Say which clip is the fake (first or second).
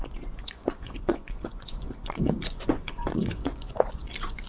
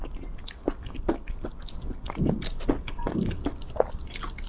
first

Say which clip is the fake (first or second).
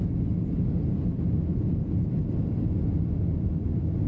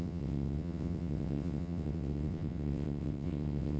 second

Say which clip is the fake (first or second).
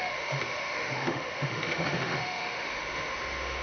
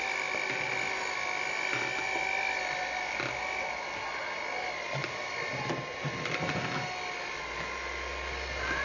first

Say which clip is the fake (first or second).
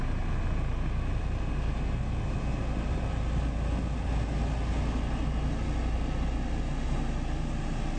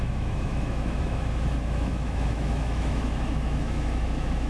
second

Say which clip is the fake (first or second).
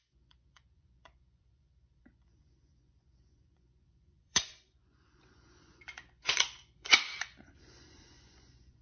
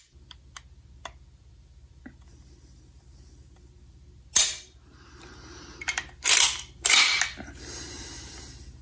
first